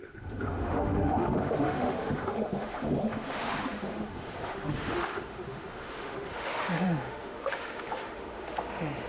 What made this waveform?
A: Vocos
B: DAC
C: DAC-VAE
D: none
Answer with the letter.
C